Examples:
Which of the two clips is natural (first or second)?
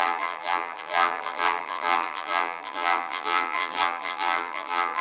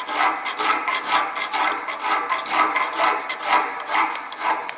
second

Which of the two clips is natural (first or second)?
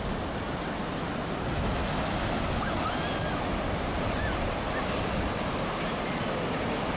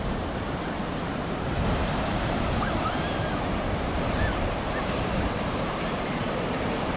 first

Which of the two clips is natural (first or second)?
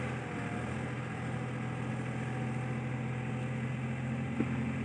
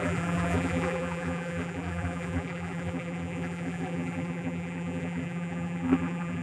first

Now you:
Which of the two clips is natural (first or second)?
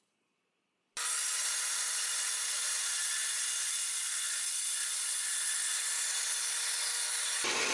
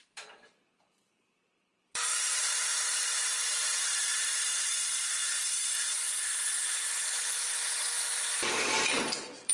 first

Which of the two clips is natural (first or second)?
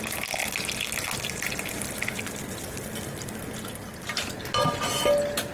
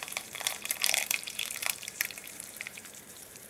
first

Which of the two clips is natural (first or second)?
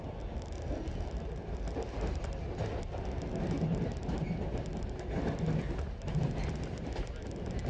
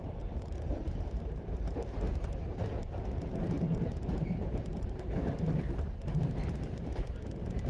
first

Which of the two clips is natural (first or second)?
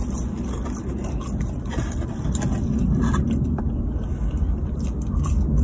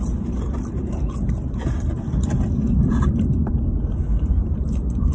first